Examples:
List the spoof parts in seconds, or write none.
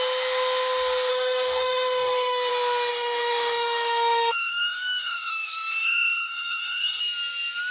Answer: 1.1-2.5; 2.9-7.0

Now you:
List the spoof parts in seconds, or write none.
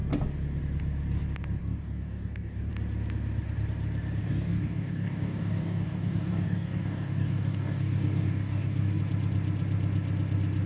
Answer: 1.6-2.7; 4.2-9.0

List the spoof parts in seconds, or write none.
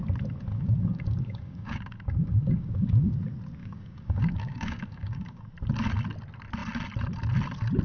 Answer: 0.5-3.1; 3.6-5.4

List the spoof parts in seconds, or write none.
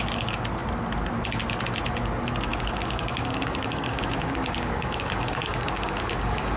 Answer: 2.5-6.6